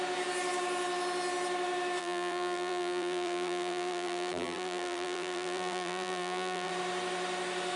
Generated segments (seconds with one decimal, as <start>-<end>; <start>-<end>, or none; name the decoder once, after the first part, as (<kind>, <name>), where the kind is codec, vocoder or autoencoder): 2.0-6.7 (vocoder, BigVGAN v2)